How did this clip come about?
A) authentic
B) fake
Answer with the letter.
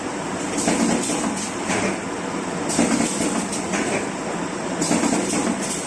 A